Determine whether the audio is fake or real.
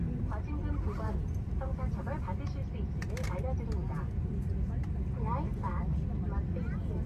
real